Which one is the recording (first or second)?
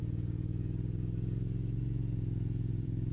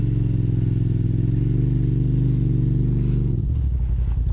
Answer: second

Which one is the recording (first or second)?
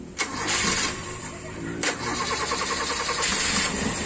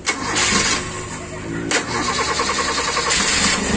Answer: second